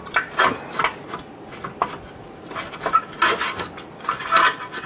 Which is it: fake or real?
real